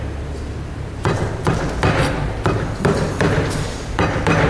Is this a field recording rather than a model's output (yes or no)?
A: yes